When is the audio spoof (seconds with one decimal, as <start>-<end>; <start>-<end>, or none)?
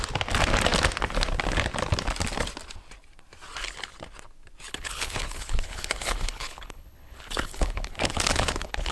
4.7-8.9